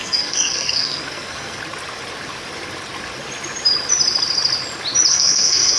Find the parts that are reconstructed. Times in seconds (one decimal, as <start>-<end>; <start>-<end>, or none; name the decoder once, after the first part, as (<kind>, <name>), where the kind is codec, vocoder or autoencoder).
0.0-1.6 (codec, SNAC); 5.1-5.8